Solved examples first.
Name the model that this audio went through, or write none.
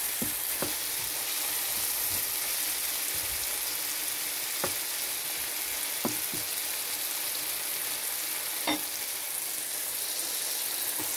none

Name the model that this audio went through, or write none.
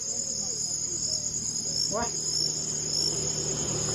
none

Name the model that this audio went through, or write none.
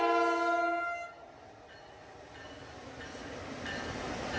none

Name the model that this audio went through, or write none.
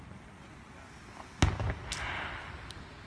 none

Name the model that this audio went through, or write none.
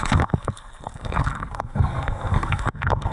codec, SNAC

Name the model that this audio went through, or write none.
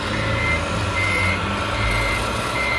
none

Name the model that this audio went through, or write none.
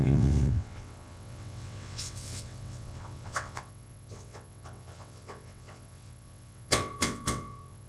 vocoder, WaveNeXt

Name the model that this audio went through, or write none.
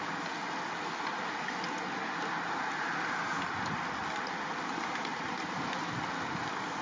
none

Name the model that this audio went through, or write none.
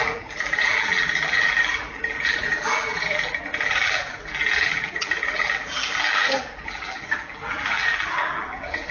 vocoder, BigVGAN v2